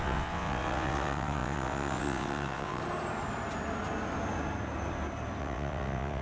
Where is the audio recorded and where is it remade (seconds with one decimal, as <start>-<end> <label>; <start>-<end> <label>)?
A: 0.0-2.8 remade; 2.8-5.4 recorded; 5.4-6.2 remade